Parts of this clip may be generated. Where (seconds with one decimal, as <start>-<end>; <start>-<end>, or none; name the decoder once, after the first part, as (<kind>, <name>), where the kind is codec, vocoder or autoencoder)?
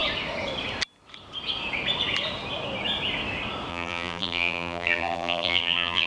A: 3.7-6.1 (vocoder, BigVGAN v2)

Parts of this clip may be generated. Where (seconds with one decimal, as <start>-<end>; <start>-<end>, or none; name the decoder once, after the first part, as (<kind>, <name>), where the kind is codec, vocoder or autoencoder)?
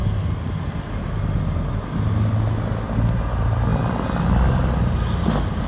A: none